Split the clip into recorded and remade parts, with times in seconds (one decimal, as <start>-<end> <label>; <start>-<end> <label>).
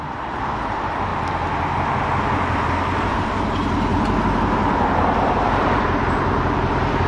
0.0-1.1 remade; 1.1-3.1 recorded; 3.1-3.9 remade; 3.9-4.8 recorded; 4.8-7.1 remade